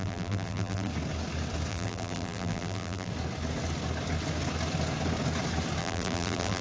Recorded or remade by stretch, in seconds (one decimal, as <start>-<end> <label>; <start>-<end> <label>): 0.0-0.9 remade; 0.9-1.7 recorded; 1.7-3.1 remade; 3.1-5.8 recorded; 5.8-6.6 remade